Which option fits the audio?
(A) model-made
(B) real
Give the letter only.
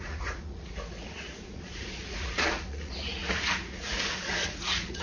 A